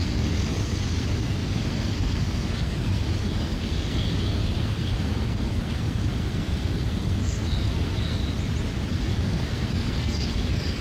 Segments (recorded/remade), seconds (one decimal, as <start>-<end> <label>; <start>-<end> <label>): 0.0-8.2 remade; 8.2-8.9 recorded; 8.9-10.8 remade